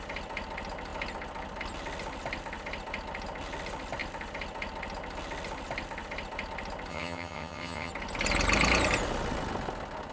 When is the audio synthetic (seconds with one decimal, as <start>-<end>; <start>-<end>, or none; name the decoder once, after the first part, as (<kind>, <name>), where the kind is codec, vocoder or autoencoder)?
6.9-7.9 (vocoder, HiFi-GAN)